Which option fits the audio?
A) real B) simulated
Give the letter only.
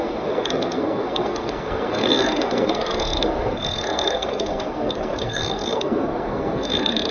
B